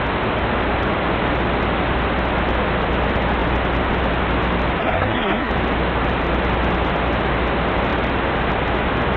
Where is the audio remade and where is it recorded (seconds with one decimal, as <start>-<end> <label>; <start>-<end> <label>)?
0.0-4.8 recorded; 4.8-5.5 remade; 5.5-9.2 recorded